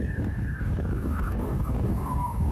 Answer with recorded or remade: remade